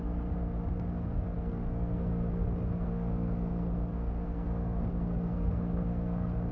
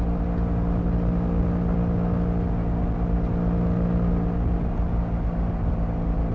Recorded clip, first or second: second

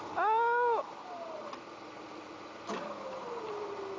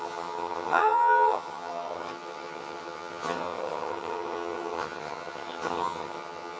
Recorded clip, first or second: first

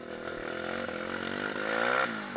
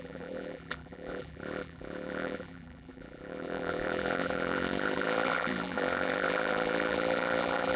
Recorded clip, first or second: first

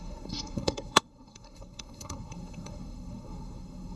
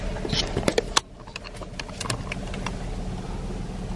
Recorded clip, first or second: second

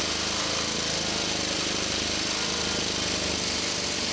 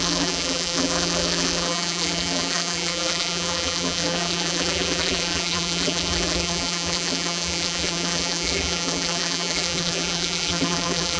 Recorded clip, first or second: first